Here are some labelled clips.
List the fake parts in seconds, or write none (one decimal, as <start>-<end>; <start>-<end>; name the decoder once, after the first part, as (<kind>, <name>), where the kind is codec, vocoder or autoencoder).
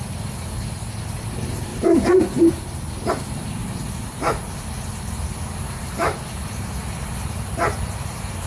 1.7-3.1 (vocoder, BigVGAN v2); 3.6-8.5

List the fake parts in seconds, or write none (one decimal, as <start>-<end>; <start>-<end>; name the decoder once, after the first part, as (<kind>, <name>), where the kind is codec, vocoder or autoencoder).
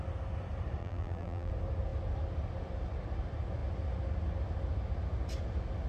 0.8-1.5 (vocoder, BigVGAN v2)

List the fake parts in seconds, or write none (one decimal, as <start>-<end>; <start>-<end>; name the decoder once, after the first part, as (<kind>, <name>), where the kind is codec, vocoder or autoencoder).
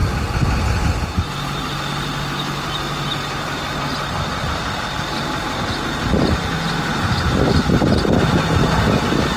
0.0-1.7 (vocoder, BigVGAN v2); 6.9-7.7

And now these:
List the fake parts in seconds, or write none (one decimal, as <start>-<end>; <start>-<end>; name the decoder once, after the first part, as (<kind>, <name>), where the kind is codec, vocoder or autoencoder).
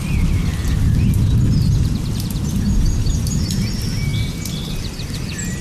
none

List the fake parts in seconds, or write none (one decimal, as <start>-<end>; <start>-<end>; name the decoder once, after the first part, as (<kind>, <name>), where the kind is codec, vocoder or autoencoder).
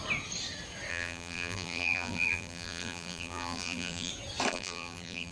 0.9-4.1 (vocoder, BigVGAN v2); 4.5-5.3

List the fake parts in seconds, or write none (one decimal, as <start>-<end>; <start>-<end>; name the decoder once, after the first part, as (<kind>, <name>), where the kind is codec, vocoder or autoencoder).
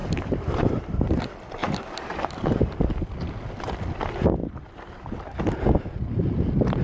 0.0-1.2 (vocoder, BigVGAN v2); 1.6-2.6; 4.4-5.1